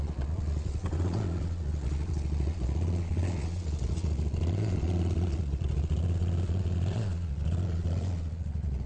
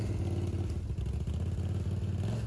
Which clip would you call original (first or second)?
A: second